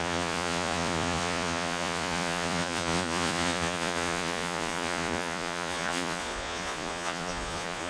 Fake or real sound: fake